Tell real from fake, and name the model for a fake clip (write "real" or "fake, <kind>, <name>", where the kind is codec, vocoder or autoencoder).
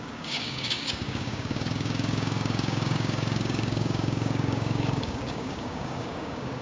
fake, codec, DAC